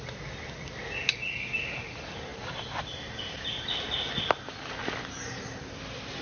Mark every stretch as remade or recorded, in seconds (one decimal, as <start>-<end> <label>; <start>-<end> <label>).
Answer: 0.0-6.2 recorded